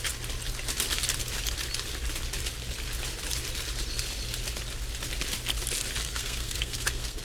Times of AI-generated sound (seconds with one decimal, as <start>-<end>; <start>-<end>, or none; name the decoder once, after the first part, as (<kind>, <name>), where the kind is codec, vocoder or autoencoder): 6.0-7.2 (codec, SNAC)